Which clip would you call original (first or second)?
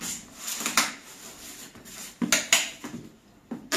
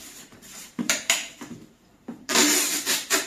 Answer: first